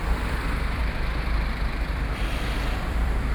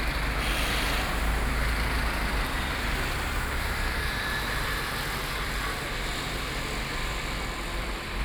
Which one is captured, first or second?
second